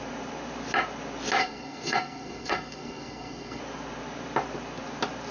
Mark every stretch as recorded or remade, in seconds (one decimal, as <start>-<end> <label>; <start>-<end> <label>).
0.0-1.4 recorded; 1.4-3.6 remade; 3.6-5.3 recorded

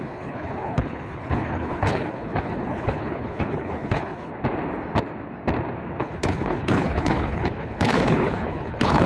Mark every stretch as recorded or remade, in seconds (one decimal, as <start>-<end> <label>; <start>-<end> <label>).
0.0-4.3 remade; 4.3-6.0 recorded; 6.0-9.1 remade

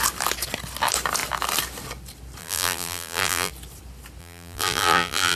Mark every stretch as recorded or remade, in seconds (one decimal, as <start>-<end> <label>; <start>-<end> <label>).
0.0-2.4 recorded; 2.4-3.5 remade; 3.5-4.2 recorded; 4.2-5.4 remade

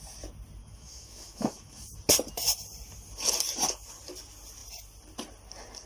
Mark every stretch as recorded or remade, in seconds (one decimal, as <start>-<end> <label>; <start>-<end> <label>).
0.0-0.6 recorded; 0.6-1.9 remade; 1.9-5.9 recorded

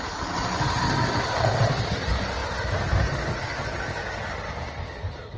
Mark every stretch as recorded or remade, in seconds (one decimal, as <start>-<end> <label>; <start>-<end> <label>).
0.0-2.4 recorded; 2.4-3.4 remade; 3.4-5.4 recorded